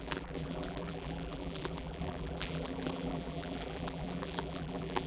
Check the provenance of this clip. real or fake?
fake